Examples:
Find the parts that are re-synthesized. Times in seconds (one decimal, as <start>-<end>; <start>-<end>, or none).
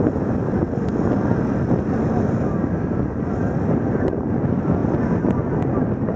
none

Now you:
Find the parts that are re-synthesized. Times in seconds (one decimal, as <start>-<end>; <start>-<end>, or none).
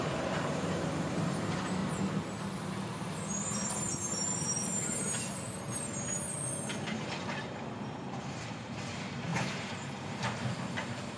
0.0-1.8; 4.1-11.2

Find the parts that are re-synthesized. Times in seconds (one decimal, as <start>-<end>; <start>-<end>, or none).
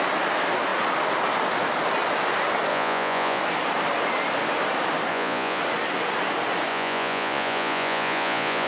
2.7-3.4; 5.1-5.6; 6.7-8.7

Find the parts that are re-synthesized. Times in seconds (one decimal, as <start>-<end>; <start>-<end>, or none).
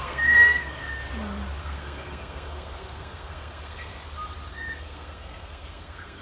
0.0-1.0; 1.6-3.9; 4.5-6.2